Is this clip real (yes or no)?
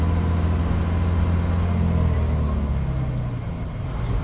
yes